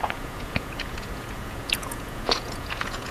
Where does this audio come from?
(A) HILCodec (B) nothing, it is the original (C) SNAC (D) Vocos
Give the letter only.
D